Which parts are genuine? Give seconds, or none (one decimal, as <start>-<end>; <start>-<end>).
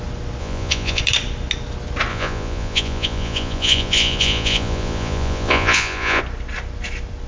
0.0-0.4; 1.0-2.1; 6.2-7.3